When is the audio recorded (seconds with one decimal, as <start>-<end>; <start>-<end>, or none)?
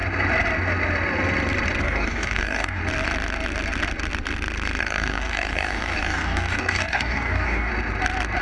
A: 0.0-1.8; 2.8-4.8; 7.7-8.4